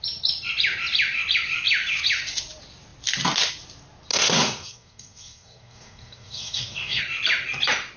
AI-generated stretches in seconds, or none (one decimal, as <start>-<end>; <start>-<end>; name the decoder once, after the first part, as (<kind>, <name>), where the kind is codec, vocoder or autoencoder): 4.1-7.0 (codec, SNAC)